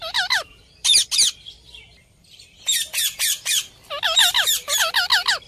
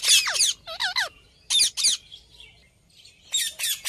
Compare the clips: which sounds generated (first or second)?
first